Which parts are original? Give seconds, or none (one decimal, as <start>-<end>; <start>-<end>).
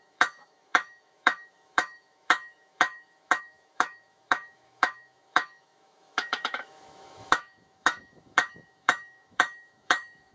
none